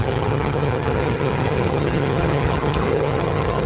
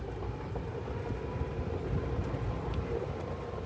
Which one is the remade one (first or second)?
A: first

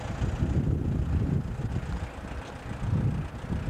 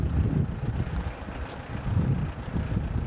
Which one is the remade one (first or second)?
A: second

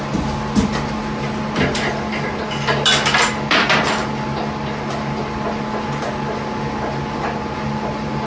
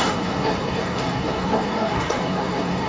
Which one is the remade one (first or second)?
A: second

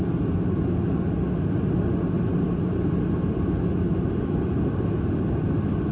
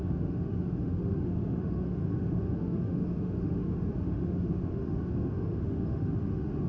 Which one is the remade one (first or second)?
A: second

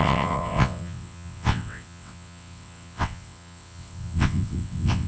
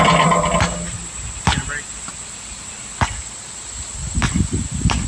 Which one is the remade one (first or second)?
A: first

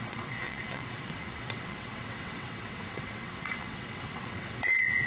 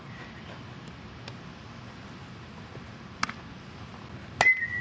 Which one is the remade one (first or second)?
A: first